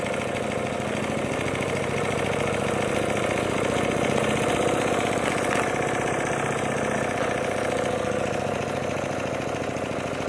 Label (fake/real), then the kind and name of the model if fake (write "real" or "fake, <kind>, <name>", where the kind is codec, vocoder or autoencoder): real